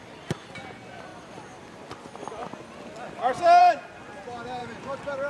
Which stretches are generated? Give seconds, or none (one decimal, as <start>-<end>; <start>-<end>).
1.1-1.9; 4.6-5.3